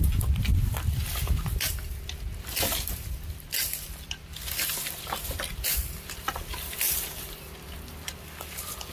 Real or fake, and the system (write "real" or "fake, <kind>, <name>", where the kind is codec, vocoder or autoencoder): real